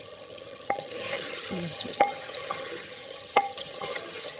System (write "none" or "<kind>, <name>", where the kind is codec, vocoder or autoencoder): vocoder, HiFi-GAN